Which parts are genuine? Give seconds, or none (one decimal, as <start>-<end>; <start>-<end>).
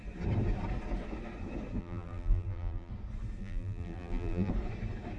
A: 0.0-1.8; 2.9-3.4; 4.5-5.2